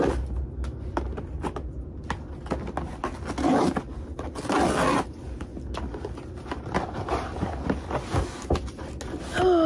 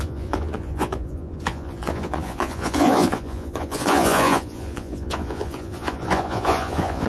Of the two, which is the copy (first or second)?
second